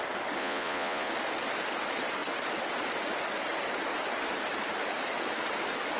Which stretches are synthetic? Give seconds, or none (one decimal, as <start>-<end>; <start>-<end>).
0.4-1.1